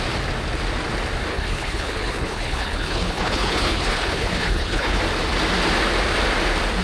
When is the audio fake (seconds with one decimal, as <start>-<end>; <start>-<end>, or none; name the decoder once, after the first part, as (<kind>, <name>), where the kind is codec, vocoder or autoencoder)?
1.3-5.0 (codec, HILCodec)